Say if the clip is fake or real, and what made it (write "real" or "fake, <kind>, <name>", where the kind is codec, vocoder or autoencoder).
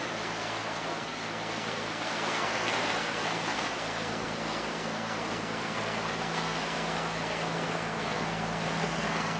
fake, codec, SNAC